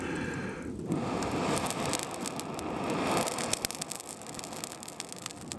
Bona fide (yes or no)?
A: yes